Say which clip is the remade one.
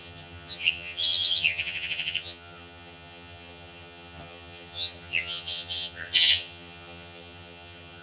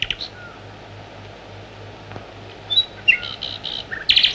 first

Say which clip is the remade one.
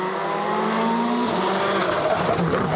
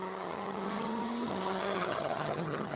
second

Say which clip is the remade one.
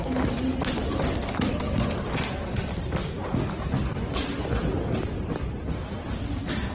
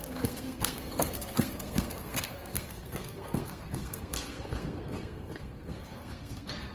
second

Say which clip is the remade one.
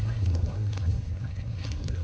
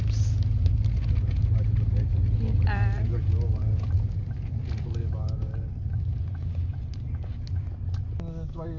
first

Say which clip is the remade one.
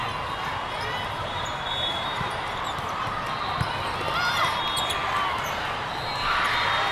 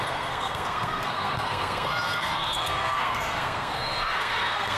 second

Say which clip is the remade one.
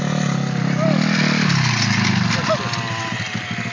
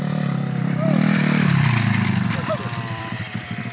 second